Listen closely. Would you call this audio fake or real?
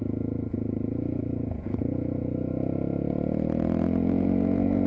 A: fake